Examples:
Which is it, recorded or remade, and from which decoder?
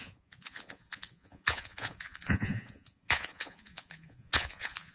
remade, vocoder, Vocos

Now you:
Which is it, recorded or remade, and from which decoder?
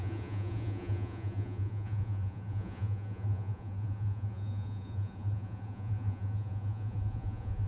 remade, vocoder, Vocos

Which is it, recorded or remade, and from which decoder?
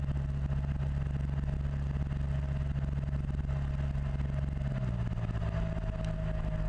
recorded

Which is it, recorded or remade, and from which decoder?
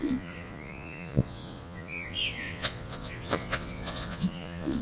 remade, vocoder, Vocos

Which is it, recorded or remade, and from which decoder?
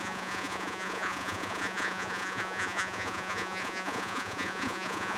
remade, vocoder, Vocos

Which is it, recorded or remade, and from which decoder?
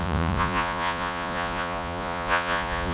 remade, vocoder, Vocos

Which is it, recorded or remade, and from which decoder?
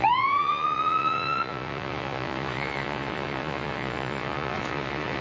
remade, vocoder, Vocos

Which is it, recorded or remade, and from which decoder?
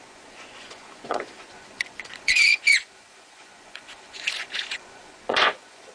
remade, vocoder, Vocos